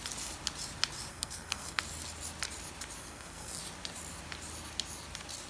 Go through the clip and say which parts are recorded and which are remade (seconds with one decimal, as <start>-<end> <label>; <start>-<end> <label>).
0.0-1.1 recorded; 1.1-1.8 remade; 1.8-3.0 recorded; 3.0-3.6 remade; 3.6-5.5 recorded